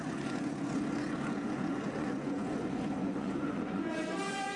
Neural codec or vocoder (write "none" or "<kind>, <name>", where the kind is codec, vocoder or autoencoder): vocoder, Vocos